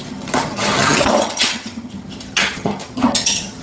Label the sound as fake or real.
fake